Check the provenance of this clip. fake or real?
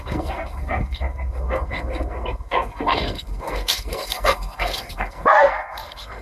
fake